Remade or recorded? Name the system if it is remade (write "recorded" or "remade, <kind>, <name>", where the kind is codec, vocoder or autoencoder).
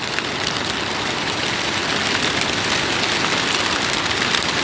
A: recorded